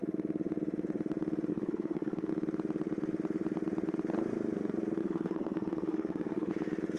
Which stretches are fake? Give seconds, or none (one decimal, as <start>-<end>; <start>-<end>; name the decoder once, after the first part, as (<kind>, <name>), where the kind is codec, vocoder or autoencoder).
1.5-2.3 (codec, SNAC); 5.0-6.5